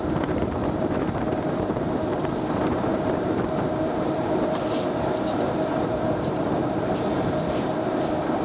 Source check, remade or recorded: remade